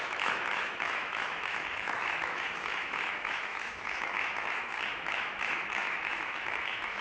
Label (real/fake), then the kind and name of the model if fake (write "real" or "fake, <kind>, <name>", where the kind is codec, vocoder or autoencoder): fake, autoencoder, DAC-VAE